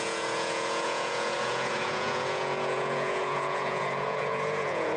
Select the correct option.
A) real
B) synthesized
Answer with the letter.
B